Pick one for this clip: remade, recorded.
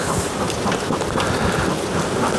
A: recorded